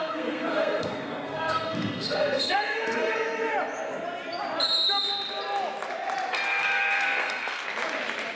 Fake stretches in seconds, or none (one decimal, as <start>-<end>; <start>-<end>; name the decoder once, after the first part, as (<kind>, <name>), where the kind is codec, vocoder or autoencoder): 0.0-3.5 (codec, SNAC); 6.3-7.6